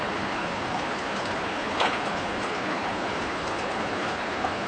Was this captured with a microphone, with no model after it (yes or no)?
no